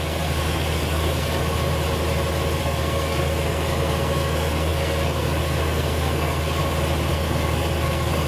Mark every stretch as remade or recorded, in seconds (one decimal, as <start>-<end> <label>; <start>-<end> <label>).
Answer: 0.0-1.4 remade; 1.4-2.6 recorded; 2.6-6.6 remade; 6.6-7.1 recorded; 7.1-8.3 remade